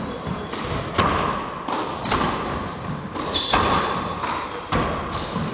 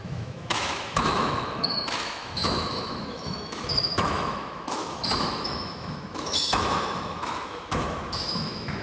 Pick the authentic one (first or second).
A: first